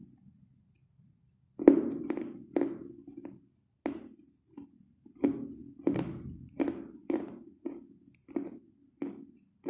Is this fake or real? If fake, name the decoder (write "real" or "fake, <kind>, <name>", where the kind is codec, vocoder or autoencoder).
real